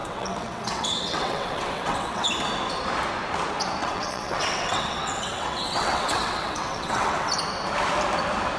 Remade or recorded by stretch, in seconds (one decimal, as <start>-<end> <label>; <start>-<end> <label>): 0.0-2.3 remade; 2.3-3.8 recorded; 3.8-7.3 remade; 7.3-8.6 recorded